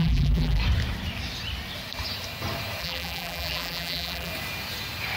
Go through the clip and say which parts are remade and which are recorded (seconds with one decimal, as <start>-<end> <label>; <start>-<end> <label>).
0.0-0.6 remade; 0.6-2.8 recorded; 2.8-4.3 remade; 4.3-5.2 recorded